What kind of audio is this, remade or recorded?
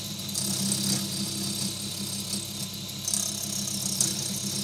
recorded